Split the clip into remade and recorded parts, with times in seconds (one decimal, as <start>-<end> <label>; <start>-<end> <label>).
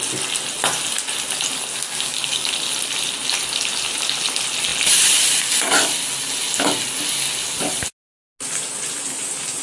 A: 0.0-1.7 recorded; 1.7-2.5 remade; 2.5-9.6 recorded